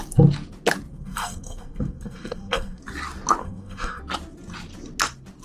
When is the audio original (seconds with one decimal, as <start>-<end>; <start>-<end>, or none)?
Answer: 0.0-0.9; 2.8-3.4; 4.0-5.4